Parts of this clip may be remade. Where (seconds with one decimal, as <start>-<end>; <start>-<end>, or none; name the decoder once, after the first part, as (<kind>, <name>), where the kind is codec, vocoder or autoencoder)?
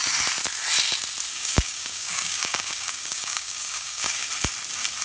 1.3-4.3 (codec, DAC)